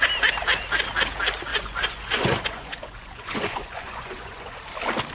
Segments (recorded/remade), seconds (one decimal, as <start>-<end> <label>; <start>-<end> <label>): 0.0-1.5 recorded; 1.5-4.6 remade; 4.6-5.1 recorded